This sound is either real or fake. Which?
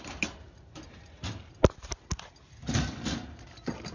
real